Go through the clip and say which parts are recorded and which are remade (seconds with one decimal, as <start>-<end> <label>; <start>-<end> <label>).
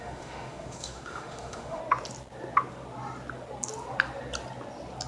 0.0-1.8 remade; 1.8-5.1 recorded